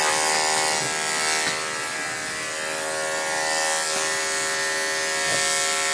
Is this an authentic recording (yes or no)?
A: yes